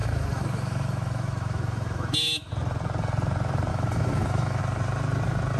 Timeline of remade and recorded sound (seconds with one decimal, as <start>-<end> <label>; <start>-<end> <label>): 0.0-2.5 remade; 2.5-3.7 recorded; 3.7-4.6 remade; 4.6-5.6 recorded